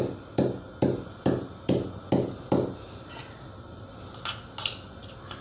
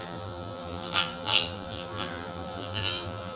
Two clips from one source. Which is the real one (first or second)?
first